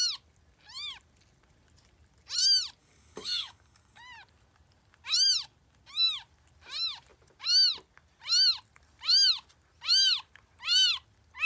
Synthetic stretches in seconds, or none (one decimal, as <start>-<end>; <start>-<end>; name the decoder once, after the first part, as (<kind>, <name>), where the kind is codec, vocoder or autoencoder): 2.8-4.0 (codec, DAC)